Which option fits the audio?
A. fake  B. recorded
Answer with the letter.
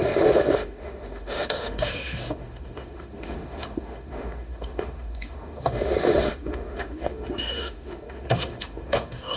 A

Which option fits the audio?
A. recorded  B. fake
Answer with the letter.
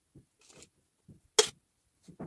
A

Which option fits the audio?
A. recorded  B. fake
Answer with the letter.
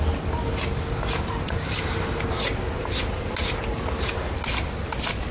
A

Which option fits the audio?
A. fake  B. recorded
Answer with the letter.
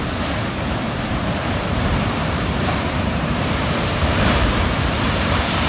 A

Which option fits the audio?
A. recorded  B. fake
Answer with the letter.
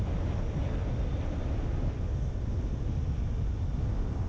A